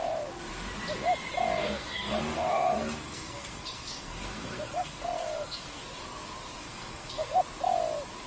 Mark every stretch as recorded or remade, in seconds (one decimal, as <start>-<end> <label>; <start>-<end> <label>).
0.0-1.6 recorded; 1.6-5.8 remade; 5.8-6.6 recorded; 6.6-7.4 remade; 7.4-8.3 recorded